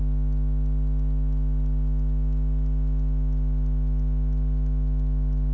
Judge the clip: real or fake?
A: real